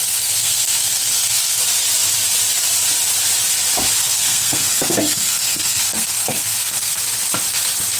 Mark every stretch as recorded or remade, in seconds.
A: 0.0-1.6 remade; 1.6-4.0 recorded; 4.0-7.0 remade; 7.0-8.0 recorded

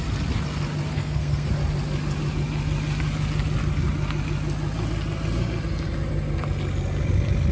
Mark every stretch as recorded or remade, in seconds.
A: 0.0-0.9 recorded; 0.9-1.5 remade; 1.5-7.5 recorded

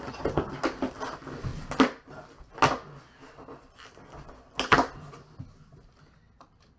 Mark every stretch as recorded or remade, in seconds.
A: 0.0-6.8 recorded

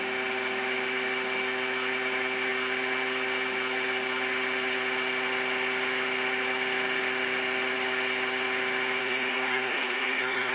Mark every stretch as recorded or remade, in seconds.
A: 0.0-9.0 recorded; 9.0-10.5 remade

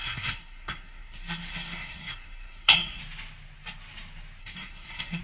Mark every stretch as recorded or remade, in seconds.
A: 0.0-3.0 remade; 3.0-4.4 recorded; 4.4-5.2 remade

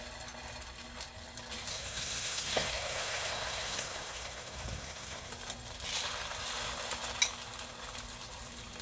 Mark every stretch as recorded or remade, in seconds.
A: 0.0-1.7 recorded; 1.7-5.3 remade; 5.3-8.8 recorded

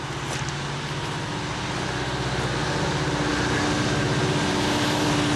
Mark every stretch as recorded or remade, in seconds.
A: 0.0-5.4 recorded